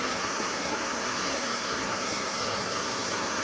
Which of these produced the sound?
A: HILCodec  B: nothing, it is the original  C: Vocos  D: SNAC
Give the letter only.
D